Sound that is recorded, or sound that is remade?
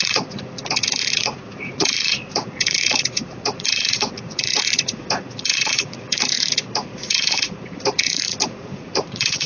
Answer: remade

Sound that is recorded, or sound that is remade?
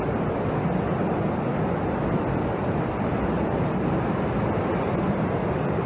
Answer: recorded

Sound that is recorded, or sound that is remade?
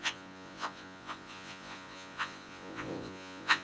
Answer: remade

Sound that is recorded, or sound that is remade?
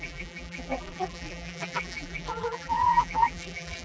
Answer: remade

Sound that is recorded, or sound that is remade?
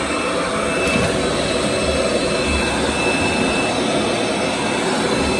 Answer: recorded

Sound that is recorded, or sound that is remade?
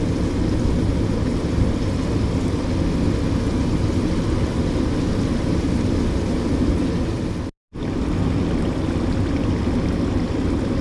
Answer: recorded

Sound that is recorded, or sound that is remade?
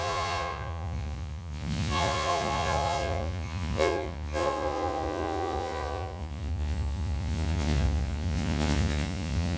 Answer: remade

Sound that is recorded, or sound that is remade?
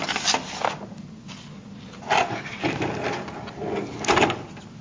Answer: recorded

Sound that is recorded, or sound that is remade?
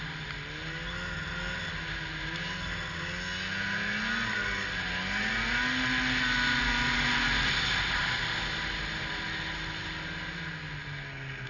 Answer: recorded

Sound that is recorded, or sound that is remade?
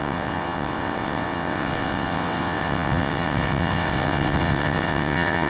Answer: remade